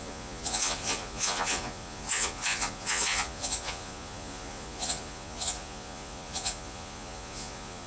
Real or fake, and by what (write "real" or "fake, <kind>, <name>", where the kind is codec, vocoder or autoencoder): fake, vocoder, Vocos